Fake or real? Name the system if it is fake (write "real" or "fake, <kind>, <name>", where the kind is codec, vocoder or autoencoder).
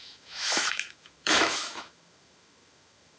fake, autoencoder, DAC-VAE